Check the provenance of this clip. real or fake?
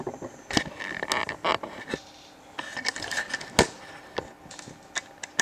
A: real